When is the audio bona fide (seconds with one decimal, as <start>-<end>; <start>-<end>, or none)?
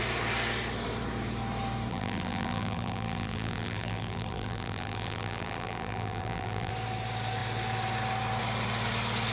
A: 0.0-1.9; 6.7-9.3